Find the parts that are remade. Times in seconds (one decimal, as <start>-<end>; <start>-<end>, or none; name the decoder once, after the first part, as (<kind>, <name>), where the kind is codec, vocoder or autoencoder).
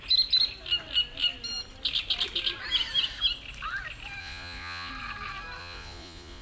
4.2-4.9 (vocoder, Vocos); 5.6-6.4